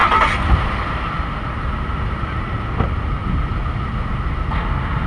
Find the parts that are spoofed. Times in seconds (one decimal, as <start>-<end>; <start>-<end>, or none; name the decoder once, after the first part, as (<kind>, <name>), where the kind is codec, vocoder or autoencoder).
none